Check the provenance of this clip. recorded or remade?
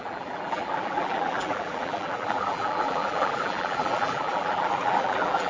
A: remade